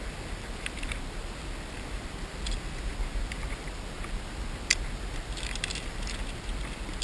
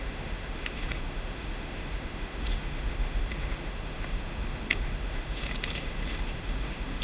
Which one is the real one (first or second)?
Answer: first